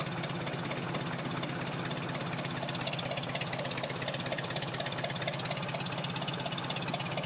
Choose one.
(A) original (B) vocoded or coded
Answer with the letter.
A